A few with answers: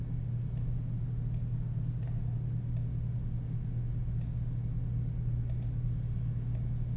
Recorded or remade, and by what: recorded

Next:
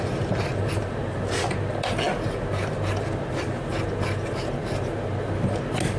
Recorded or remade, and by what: recorded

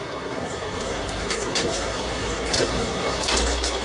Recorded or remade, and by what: remade, codec, SNAC